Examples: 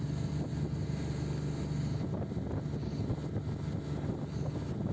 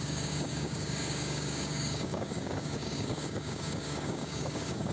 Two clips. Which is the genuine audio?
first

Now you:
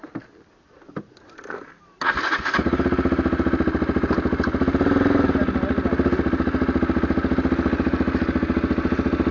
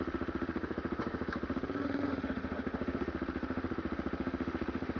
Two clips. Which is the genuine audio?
first